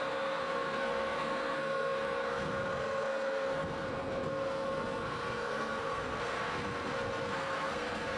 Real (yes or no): no